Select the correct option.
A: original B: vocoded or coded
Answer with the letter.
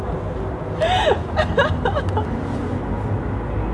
A